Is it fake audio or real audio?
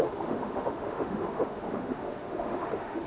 fake